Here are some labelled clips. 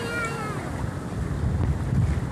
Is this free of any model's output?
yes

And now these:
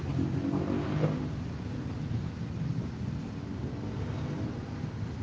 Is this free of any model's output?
yes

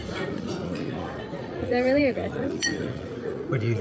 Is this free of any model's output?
no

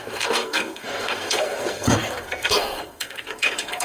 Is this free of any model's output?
no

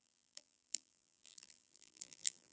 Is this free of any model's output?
no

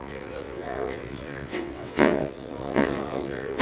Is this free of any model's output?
no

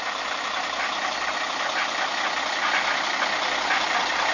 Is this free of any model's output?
yes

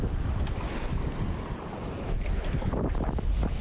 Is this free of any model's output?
yes